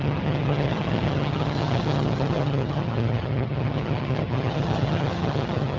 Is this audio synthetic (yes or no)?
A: yes